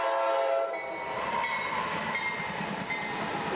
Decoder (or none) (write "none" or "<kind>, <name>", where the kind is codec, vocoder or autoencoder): none